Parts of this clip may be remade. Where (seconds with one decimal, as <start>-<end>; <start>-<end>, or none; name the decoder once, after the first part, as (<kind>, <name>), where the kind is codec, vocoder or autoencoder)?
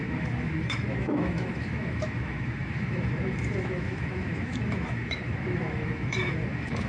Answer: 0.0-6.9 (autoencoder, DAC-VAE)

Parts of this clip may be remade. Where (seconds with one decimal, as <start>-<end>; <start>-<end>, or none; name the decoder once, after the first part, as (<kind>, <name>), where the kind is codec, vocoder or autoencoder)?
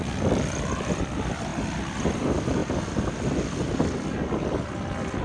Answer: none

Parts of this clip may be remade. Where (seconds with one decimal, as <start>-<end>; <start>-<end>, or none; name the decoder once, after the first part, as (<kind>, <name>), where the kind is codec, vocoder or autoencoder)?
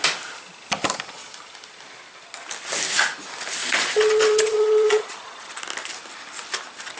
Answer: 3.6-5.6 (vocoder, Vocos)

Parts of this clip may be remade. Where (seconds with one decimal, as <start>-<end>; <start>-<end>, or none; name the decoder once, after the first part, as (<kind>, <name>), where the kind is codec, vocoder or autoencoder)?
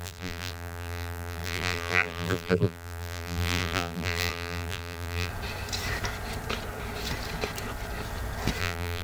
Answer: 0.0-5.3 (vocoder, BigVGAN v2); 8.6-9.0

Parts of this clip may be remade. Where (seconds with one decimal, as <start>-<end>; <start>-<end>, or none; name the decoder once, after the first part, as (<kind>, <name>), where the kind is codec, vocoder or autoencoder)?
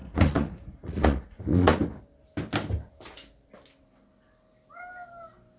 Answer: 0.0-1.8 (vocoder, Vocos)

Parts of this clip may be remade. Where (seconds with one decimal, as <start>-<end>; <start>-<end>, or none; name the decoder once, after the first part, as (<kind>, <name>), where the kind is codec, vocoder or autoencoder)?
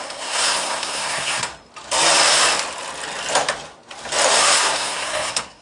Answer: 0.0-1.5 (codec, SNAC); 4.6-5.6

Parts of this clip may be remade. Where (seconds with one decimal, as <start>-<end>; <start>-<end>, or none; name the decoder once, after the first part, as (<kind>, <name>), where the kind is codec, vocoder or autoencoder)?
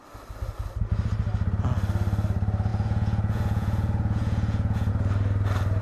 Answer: 2.7-4.9 (vocoder, Vocos)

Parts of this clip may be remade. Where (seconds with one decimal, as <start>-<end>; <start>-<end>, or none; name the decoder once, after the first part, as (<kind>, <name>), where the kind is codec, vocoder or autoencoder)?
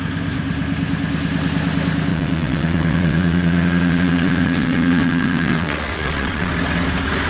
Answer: 2.1-6.5 (vocoder, WaveNeXt)